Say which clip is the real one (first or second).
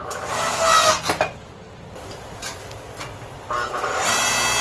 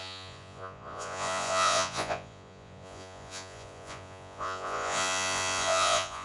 first